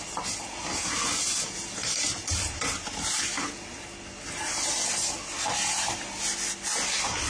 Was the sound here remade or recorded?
recorded